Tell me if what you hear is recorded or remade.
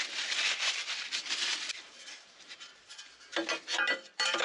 remade